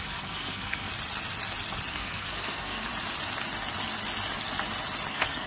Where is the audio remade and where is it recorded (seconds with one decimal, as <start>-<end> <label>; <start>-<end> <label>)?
0.0-0.9 remade; 0.9-1.9 recorded; 1.9-2.9 remade; 2.9-5.1 recorded; 5.1-5.5 remade